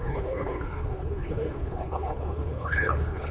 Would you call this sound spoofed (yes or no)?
yes